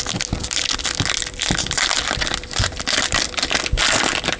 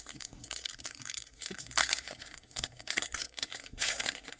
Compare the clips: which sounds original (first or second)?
first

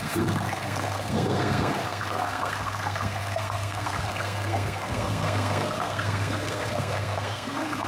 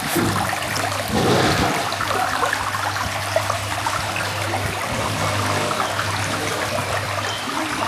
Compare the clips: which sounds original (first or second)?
second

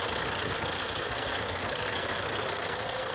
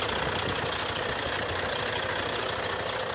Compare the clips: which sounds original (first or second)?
second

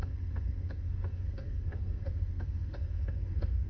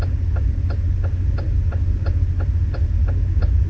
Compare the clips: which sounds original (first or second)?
second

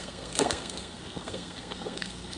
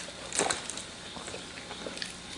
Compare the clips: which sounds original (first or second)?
second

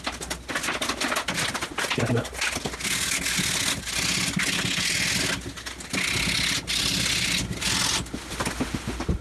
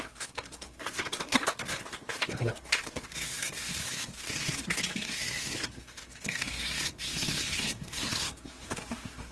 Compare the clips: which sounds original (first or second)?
first